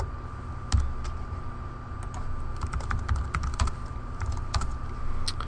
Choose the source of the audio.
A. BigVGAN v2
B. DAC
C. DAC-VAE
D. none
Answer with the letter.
D